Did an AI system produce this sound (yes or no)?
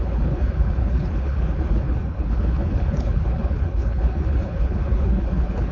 yes